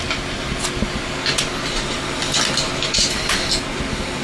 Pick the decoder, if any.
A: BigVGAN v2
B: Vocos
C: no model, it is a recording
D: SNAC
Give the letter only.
C